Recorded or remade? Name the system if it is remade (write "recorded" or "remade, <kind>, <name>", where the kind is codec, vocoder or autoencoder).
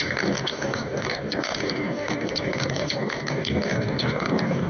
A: remade, codec, DAC